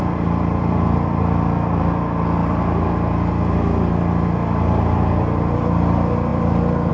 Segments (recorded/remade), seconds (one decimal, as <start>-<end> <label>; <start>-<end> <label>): 0.0-6.9 recorded